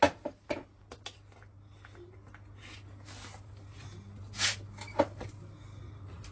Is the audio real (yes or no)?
yes